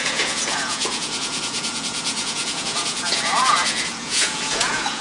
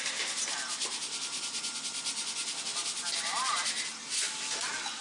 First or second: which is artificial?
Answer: first